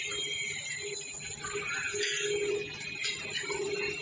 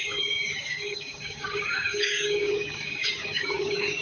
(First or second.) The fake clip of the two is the second